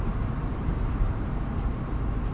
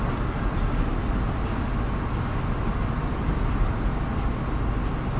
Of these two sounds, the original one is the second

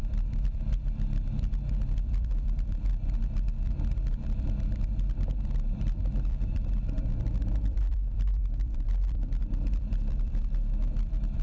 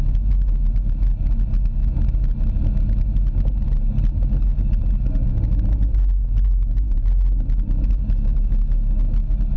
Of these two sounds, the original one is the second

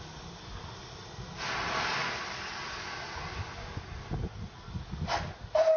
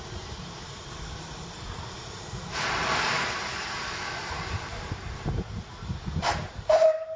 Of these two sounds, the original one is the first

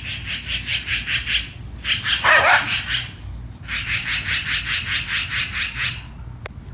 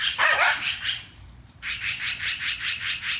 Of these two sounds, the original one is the first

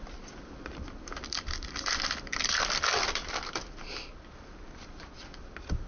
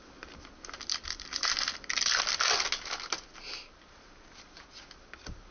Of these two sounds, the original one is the second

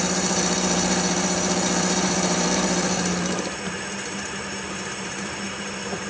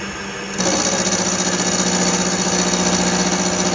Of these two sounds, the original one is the second